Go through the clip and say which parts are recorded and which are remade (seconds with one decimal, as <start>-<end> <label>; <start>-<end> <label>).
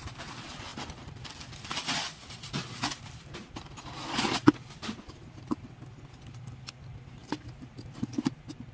0.0-0.7 recorded; 0.7-5.7 remade; 5.7-7.2 recorded; 7.2-7.8 remade; 7.8-8.7 recorded